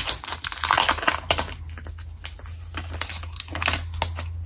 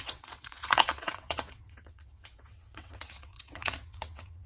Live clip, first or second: first